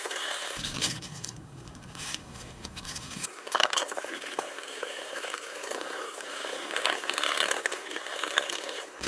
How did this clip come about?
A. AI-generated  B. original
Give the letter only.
A